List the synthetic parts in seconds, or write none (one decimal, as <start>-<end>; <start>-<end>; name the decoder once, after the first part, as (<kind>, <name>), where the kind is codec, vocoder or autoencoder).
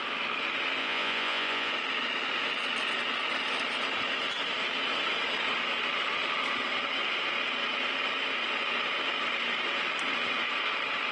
0.8-1.7 (vocoder, Vocos)